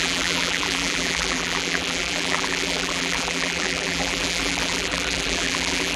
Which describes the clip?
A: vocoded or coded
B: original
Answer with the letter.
A